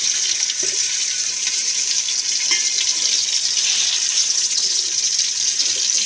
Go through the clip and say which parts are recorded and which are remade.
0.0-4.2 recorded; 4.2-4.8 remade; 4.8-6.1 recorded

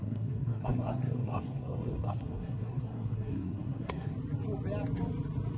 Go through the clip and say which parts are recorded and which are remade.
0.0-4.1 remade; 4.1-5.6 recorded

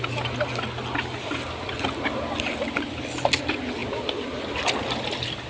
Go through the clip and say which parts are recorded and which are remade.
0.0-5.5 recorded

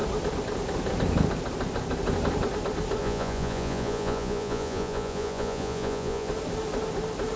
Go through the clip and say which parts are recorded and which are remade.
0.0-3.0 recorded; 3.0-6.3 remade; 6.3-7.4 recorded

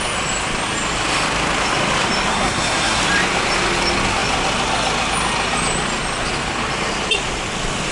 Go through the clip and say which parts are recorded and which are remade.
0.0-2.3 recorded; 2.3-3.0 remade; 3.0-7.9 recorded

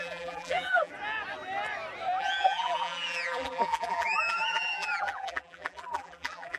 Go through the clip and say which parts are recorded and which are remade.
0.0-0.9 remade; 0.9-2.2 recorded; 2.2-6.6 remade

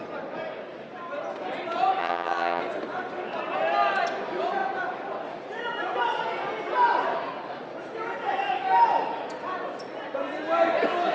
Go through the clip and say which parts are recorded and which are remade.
0.0-2.0 recorded; 2.0-2.6 remade; 2.6-11.1 recorded

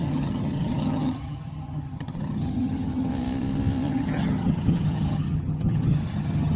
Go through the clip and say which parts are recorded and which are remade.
0.0-3.1 remade; 3.1-3.9 recorded; 3.9-6.6 remade